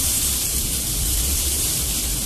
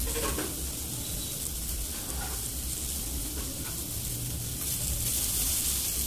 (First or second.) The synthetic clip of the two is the first